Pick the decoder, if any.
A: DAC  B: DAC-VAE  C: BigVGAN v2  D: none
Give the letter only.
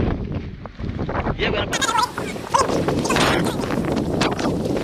C